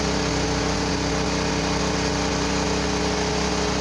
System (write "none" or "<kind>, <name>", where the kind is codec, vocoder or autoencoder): none